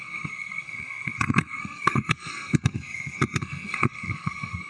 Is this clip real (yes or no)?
no